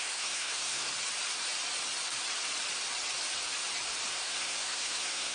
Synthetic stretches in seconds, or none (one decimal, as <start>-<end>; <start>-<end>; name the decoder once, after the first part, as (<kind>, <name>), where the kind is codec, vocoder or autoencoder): 0.0-0.9 (codec, SNAC); 4.1-5.3